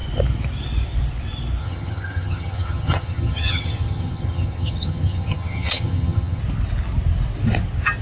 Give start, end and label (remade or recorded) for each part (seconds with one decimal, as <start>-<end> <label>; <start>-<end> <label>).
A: 0.0-1.6 recorded; 1.6-6.4 remade; 6.4-8.0 recorded